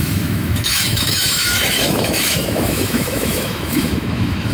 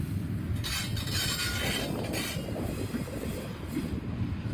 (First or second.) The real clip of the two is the second